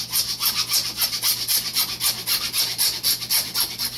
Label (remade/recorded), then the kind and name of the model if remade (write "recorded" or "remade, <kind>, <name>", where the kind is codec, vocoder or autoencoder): recorded